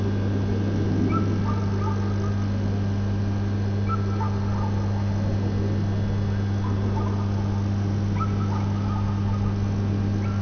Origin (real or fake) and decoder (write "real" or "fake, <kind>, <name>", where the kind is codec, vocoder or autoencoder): real